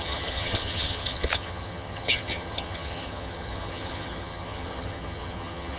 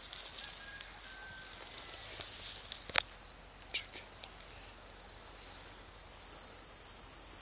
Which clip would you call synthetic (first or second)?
first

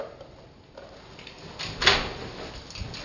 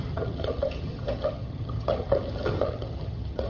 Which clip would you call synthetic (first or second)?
second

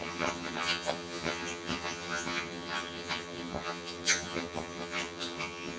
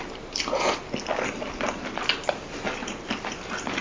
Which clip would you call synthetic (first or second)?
first